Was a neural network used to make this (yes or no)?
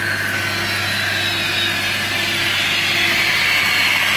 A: no